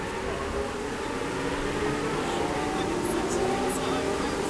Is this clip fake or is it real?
real